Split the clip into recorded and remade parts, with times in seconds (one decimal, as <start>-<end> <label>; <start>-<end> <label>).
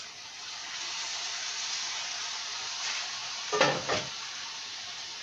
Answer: 0.0-5.2 recorded